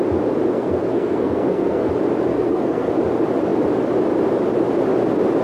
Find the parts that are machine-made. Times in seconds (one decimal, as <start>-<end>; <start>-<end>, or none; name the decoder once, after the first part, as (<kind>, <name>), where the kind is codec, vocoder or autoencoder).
0.5-1.9 (codec, SNAC); 2.3-2.9